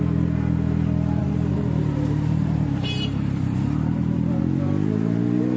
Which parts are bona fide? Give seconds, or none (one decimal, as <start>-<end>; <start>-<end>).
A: 0.0-1.2; 4.4-5.6